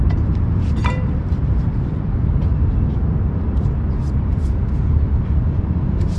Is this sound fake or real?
fake